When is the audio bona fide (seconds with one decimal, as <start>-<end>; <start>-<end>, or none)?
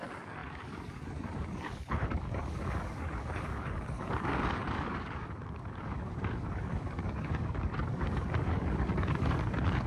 none